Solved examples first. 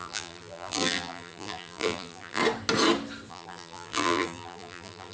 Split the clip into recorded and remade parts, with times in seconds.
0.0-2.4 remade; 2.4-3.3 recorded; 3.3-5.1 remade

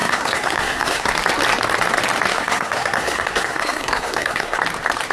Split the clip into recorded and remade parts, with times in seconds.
0.0-1.1 remade; 1.1-2.3 recorded; 2.3-4.6 remade; 4.6-5.1 recorded

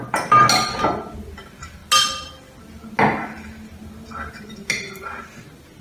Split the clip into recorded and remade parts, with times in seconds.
0.0-5.8 recorded

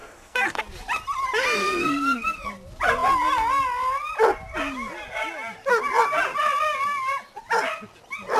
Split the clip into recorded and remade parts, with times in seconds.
0.0-0.6 remade; 0.6-1.6 recorded; 1.6-2.5 remade; 2.5-8.4 recorded

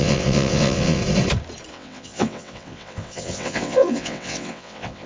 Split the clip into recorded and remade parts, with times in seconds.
0.0-1.0 remade; 1.0-1.7 recorded; 1.7-5.1 remade

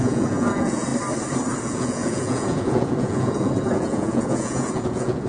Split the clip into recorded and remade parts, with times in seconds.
0.0-0.9 remade; 0.9-1.6 recorded; 1.6-5.3 remade

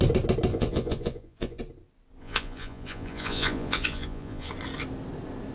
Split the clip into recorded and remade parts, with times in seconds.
0.0-0.5 recorded; 0.5-1.6 remade; 1.6-2.2 recorded; 2.2-4.5 remade; 4.5-5.5 recorded

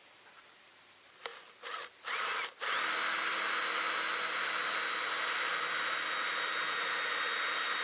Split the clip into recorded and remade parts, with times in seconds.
0.0-7.8 recorded